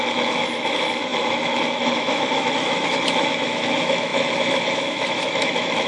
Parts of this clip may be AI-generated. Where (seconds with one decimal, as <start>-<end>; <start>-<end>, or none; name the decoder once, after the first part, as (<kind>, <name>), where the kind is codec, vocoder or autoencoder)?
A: 0.0-5.9 (autoencoder, DAC-VAE)